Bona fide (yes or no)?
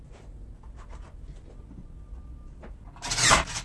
yes